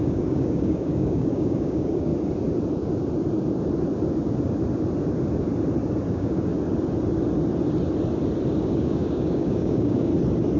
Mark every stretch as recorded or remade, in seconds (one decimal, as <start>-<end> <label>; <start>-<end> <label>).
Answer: 0.0-2.1 remade; 2.1-6.1 recorded; 6.1-6.5 remade; 6.5-8.6 recorded; 8.6-10.1 remade; 10.1-10.6 recorded